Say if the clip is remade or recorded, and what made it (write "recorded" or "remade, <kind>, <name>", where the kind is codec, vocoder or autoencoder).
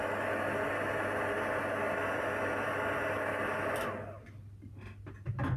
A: recorded